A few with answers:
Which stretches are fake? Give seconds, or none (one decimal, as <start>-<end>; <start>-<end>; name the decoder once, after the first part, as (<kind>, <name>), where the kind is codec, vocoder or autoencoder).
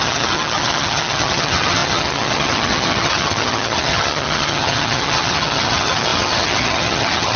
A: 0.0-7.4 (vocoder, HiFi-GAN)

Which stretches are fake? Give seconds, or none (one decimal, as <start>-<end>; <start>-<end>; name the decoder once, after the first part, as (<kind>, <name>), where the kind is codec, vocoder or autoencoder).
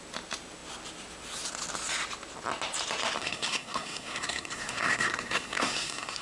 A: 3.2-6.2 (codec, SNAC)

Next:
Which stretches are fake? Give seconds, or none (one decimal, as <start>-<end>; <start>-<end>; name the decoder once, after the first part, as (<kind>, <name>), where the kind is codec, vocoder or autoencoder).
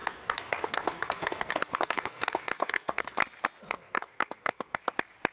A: 0.0-3.2 (codec, SNAC); 3.6-4.8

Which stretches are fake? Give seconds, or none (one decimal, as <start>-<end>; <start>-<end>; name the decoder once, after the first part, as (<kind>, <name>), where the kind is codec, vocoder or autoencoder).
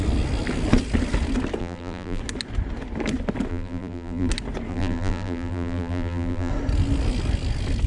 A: 1.6-2.2 (vocoder, BigVGAN v2); 3.5-4.3; 4.7-6.5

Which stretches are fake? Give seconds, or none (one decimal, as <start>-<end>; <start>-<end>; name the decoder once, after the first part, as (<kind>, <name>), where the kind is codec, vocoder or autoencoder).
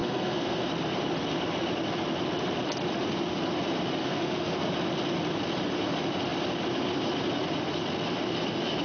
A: 0.0-0.7 (codec, SNAC); 4.0-4.7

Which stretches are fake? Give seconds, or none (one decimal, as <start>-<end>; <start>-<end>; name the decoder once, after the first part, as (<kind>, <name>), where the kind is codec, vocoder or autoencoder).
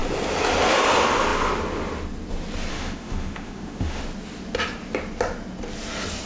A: 2.7-4.0 (autoencoder, DAC-VAE)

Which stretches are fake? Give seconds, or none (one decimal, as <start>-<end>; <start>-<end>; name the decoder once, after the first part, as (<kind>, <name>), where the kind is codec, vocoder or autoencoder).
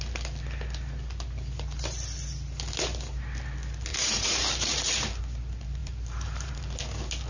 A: 3.9-5.2 (vocoder, BigVGAN v2); 5.8-6.6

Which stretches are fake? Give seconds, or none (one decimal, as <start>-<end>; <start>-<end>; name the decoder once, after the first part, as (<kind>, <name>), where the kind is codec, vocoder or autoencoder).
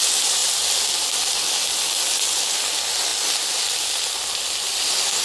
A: none